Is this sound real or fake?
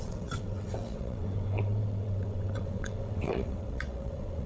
fake